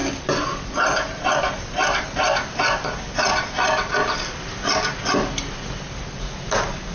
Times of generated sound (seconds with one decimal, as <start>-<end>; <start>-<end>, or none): none